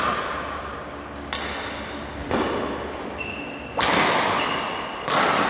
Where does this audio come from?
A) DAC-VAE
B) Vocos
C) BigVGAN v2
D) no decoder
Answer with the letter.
D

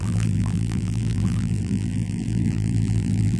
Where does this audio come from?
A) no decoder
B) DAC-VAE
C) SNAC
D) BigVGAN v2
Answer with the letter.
D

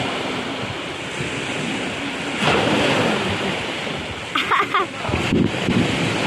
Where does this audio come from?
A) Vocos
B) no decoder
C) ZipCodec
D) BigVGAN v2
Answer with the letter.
B